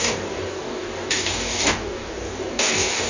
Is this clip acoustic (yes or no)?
no